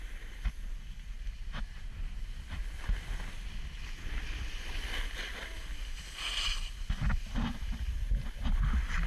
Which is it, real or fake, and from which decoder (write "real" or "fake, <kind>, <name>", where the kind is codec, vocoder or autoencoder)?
real